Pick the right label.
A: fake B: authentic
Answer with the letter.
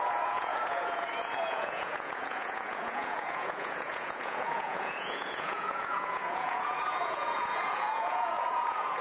A